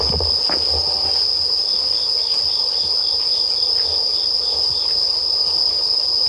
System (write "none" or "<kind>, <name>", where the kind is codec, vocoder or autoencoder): none